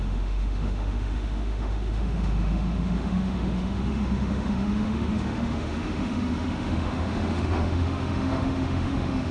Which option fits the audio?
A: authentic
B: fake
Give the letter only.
B